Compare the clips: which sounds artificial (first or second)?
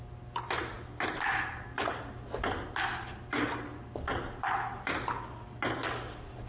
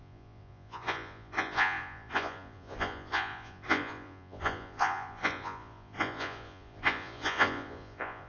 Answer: second